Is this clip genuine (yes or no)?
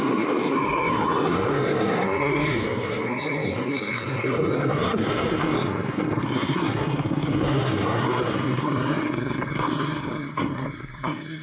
no